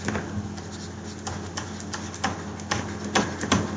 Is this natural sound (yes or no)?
yes